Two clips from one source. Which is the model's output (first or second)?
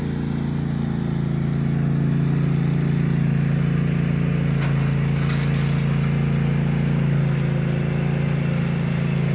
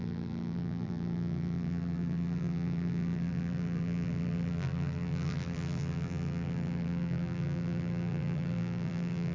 second